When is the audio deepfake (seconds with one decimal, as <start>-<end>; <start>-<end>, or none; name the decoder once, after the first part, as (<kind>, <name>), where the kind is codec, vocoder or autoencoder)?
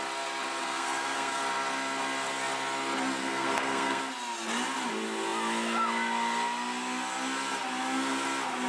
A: 0.6-1.4 (codec, SNAC); 3.2-4.0